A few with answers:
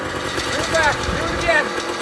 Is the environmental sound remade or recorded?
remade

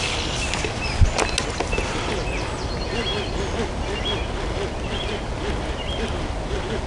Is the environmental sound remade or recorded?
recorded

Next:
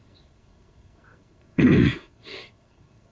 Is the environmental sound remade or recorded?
remade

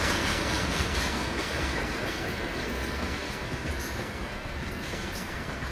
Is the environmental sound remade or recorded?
remade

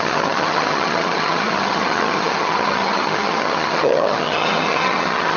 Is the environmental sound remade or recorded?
remade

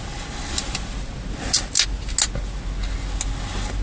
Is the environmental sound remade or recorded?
recorded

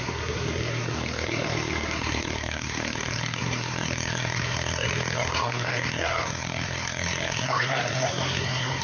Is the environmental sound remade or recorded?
remade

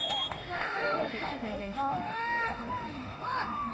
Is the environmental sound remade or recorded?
remade